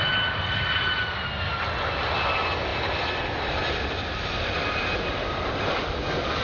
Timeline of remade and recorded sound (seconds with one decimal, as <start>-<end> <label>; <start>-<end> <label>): 0.0-6.4 recorded